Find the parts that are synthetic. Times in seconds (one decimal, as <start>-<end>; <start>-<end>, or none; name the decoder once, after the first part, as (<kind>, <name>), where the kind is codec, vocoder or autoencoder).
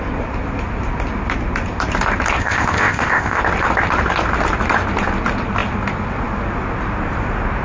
2.4-3.4 (codec, ZipCodec)